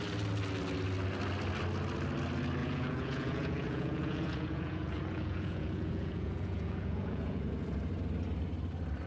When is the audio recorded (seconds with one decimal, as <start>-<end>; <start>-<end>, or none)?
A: 0.0-2.6; 7.4-9.1